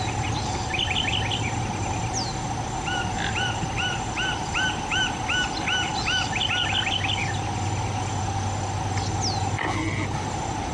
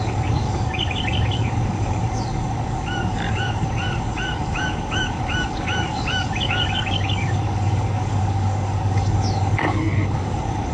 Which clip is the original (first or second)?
first